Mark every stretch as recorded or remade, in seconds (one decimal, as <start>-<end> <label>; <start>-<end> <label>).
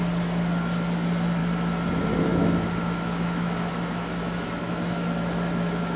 0.0-2.3 recorded; 2.3-6.0 remade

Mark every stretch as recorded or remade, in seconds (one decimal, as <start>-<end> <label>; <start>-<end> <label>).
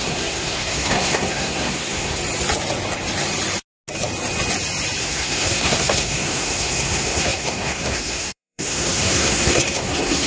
0.0-2.2 remade; 2.2-5.0 recorded; 5.0-10.3 remade